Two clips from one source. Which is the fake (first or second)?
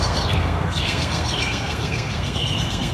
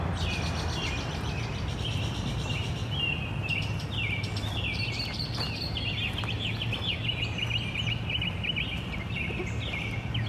first